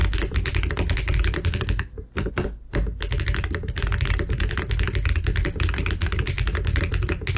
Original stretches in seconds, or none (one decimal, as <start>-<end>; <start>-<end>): 0.0-7.4

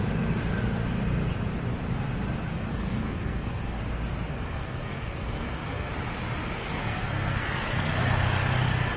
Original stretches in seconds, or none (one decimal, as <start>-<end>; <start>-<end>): 0.0-2.7; 3.8-4.3; 5.9-6.6; 8.0-9.0